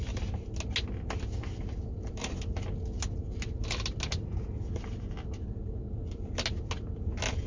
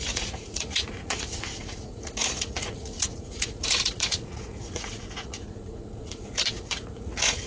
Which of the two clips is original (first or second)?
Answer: first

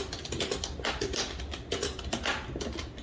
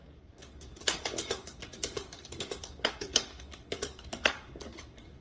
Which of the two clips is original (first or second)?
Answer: first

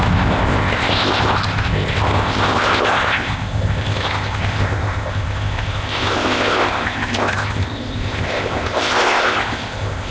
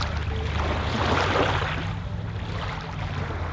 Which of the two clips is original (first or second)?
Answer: second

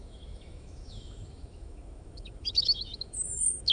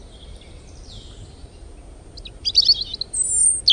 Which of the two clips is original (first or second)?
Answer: second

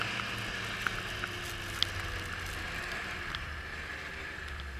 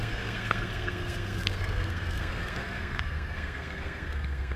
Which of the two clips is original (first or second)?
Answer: first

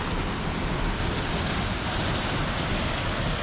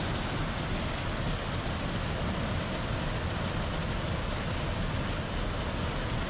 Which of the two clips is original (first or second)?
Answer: second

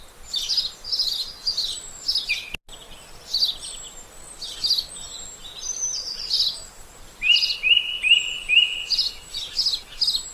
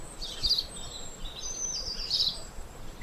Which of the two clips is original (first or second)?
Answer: first